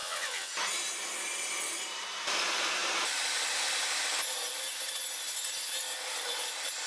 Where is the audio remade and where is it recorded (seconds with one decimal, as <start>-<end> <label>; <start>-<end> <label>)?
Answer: 0.0-0.5 remade; 0.5-6.9 recorded